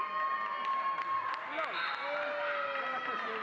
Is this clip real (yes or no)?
yes